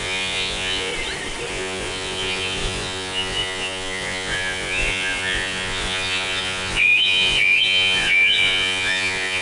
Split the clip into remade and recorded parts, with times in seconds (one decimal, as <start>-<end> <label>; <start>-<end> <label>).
0.0-0.9 remade; 0.9-1.5 recorded; 1.5-9.4 remade